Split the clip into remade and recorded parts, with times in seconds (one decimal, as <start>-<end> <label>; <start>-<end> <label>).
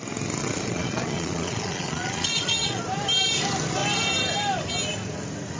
0.0-0.4 recorded; 0.4-2.8 remade; 2.8-5.6 recorded